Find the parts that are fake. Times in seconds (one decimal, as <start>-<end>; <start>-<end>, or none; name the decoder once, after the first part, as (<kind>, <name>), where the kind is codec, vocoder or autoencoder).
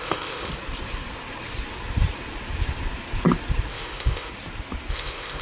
0.0-0.5 (codec, ZipCodec); 3.7-4.3; 4.9-5.4